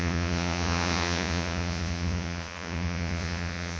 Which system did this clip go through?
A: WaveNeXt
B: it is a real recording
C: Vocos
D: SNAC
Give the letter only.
C